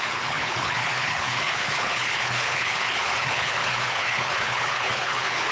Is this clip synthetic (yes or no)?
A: yes